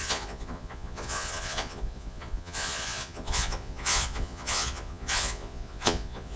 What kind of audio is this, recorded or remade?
remade